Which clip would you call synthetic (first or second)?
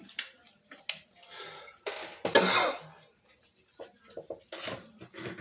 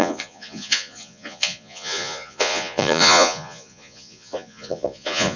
second